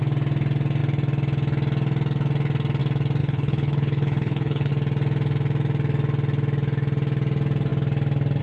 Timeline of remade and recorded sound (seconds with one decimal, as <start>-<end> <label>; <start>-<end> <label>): 0.0-3.2 recorded; 3.2-4.7 remade; 4.7-8.4 recorded